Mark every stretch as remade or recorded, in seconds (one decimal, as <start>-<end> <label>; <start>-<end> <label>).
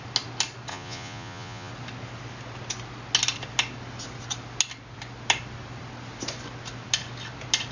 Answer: 0.0-0.7 recorded; 0.7-1.7 remade; 1.7-7.7 recorded